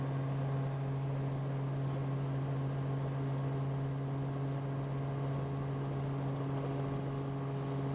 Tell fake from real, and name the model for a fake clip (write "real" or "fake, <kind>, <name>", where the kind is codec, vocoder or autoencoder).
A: real